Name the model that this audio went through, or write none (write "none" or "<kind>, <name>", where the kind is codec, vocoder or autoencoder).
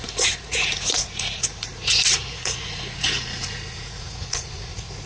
vocoder, Vocos